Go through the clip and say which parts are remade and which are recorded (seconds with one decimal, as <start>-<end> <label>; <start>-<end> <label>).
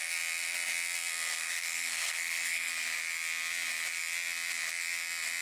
0.0-1.4 recorded; 1.4-2.7 remade; 2.7-5.4 recorded